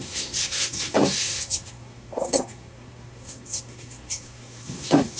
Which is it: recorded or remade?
remade